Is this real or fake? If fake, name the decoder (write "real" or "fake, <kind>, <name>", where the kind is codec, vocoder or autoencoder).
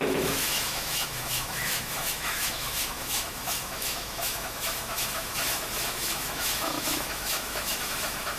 fake, autoencoder, DAC-VAE